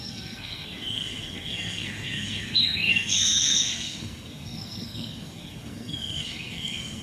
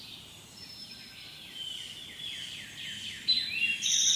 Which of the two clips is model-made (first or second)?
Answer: first